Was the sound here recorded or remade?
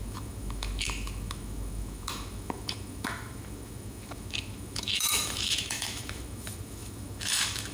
remade